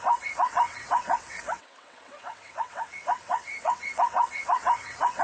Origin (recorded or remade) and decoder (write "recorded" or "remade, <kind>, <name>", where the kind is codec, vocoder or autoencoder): remade, vocoder, WaveNeXt